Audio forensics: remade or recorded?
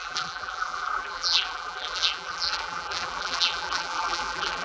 remade